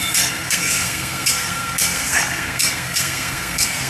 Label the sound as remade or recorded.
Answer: remade